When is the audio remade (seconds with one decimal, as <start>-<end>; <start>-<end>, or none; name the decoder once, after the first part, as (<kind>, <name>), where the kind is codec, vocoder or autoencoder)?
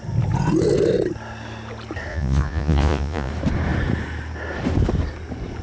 2.1-3.3 (vocoder, Vocos)